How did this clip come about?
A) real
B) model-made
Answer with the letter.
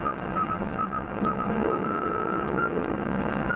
B